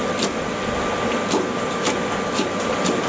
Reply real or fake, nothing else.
real